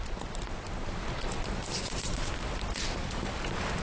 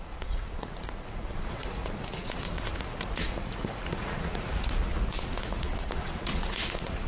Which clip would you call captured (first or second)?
first